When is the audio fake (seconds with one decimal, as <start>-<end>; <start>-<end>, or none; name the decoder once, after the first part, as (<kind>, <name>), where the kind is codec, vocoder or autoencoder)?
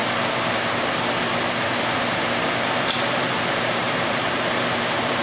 2.1-5.2 (vocoder, BigVGAN v2)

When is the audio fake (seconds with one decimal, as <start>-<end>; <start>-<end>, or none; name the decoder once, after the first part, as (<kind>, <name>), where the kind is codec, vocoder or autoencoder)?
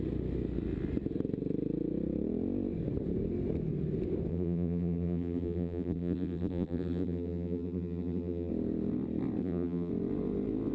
4.3-8.5 (vocoder, BigVGAN v2); 9.4-9.9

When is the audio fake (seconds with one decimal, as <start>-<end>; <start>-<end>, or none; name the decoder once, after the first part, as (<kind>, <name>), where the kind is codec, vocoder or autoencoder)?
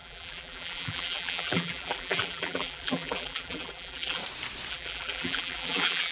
0.0-4.2 (vocoder, BigVGAN v2); 4.7-6.1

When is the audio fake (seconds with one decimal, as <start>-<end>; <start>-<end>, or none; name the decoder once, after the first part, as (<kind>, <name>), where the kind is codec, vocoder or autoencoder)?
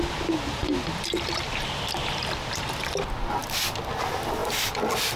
0.6-2.6 (vocoder, BigVGAN v2); 3.4-4.0; 4.4-5.2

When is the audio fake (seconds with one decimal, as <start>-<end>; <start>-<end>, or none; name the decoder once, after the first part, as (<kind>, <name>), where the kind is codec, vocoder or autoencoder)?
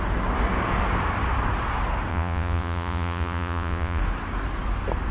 2.1-4.0 (vocoder, Vocos)